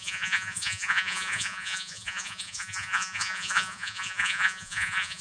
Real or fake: fake